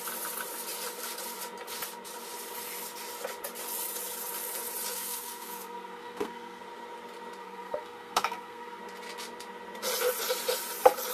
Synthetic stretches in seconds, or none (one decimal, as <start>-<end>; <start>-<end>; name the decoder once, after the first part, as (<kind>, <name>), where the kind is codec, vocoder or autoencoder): 4.9-6.6 (codec, SNAC); 7.4-8.8